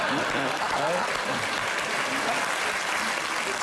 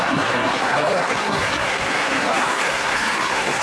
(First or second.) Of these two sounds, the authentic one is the first